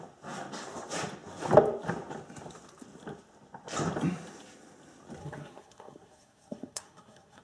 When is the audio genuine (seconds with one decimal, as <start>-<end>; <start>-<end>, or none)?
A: 0.0-5.2